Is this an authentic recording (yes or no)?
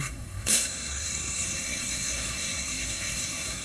no